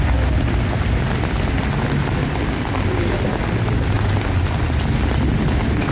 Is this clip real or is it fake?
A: real